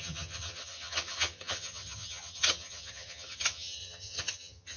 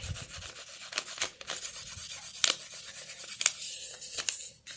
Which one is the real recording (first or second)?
second